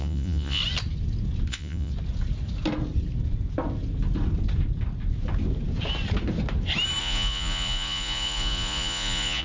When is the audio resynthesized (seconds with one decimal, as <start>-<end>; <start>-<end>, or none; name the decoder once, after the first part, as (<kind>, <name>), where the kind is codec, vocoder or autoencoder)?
0.0-0.6 (vocoder, Vocos); 1.5-1.9; 7.0-9.4